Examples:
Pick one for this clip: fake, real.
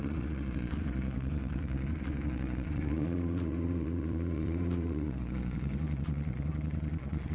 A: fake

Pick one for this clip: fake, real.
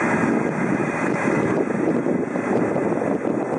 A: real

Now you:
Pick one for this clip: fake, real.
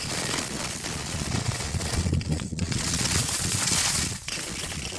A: fake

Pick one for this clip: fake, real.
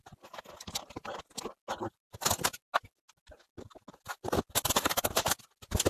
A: real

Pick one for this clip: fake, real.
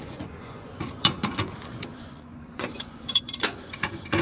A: fake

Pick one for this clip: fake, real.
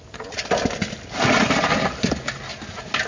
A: real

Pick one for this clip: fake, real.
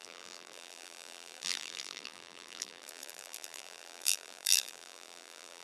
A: fake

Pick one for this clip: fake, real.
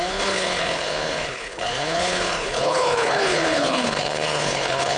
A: fake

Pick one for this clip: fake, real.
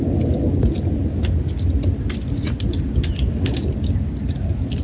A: real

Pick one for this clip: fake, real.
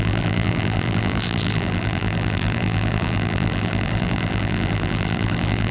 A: fake